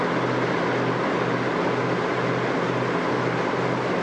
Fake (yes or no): no